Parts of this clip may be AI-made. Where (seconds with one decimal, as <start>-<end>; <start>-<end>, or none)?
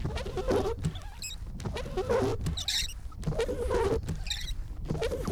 none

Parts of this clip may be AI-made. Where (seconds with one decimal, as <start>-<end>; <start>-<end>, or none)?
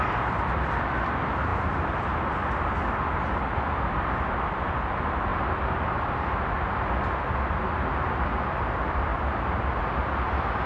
1.5-2.5; 9.1-9.8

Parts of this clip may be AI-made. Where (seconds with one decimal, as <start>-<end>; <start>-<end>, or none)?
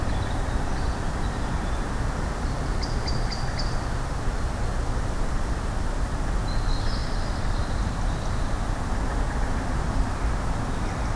7.0-8.2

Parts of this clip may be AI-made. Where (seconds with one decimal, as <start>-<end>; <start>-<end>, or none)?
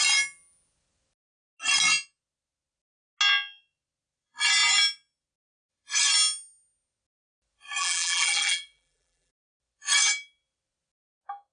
7.8-9.3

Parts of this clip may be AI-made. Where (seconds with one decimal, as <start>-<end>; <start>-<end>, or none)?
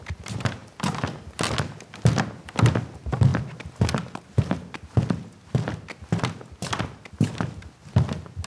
none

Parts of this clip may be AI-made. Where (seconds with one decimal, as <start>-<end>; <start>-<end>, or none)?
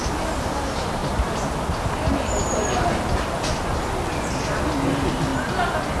0.0-1.0; 4.6-5.3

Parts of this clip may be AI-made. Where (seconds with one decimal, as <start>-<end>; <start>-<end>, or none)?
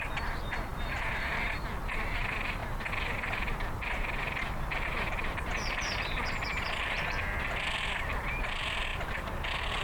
0.0-0.7; 1.7-9.8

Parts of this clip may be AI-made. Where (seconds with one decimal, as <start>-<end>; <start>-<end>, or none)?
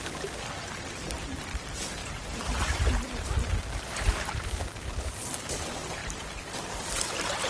2.0-4.0; 6.0-6.7